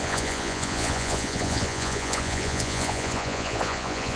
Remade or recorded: remade